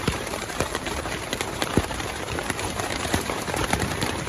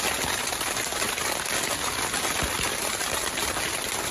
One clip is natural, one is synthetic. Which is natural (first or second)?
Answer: second